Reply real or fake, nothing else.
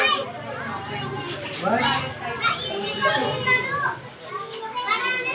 real